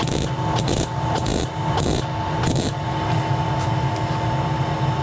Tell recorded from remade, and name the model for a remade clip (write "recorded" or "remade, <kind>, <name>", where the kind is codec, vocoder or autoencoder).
recorded